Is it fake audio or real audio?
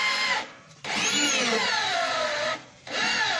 fake